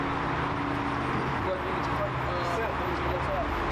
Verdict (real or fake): real